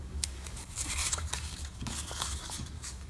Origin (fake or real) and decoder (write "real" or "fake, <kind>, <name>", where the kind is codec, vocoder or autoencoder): fake, codec, DAC